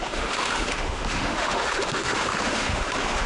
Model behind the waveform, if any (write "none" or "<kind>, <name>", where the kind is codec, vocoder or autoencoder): autoencoder, DAC-VAE